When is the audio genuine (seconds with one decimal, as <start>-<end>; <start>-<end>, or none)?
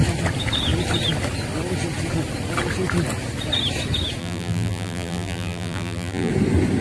0.0-4.2; 6.3-6.8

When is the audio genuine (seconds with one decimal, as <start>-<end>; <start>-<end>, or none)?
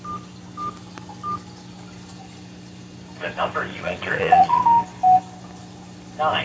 0.0-3.7; 4.6-6.4